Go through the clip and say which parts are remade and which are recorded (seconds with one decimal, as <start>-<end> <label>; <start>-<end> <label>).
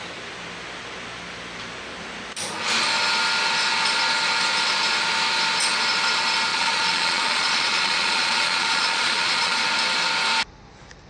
0.0-6.5 recorded; 6.5-9.6 remade; 9.6-11.1 recorded